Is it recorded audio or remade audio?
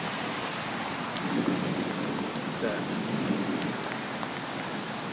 recorded